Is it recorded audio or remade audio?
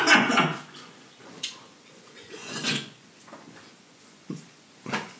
remade